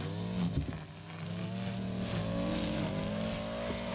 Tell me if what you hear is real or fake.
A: real